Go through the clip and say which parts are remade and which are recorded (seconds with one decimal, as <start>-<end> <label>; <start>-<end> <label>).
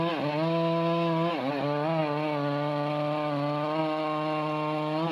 0.0-5.1 recorded